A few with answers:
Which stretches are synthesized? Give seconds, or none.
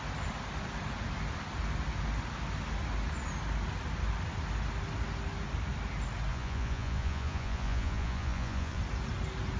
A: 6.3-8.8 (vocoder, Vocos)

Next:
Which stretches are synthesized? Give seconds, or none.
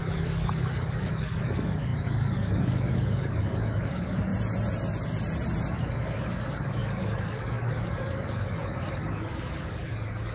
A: 0.0-4.3 (codec, DAC); 5.7-10.3